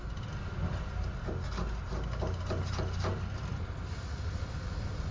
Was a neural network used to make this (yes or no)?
no